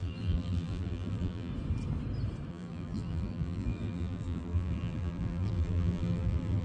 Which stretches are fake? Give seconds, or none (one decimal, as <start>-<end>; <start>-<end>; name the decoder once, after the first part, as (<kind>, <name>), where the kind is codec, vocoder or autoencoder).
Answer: 0.0-1.5 (vocoder, BigVGAN v2); 2.5-6.6